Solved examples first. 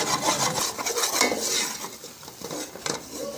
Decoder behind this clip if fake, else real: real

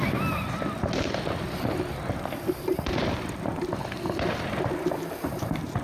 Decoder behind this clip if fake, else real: real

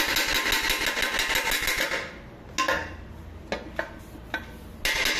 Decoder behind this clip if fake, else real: real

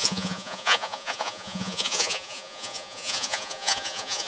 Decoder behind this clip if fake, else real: fake, vocoder, Vocos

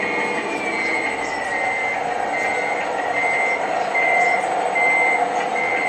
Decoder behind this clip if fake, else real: real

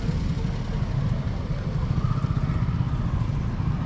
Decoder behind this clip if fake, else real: real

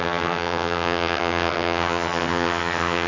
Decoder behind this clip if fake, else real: fake, vocoder, HiFi-GAN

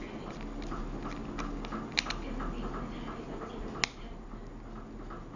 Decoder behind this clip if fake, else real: real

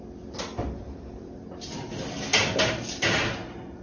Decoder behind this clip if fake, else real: real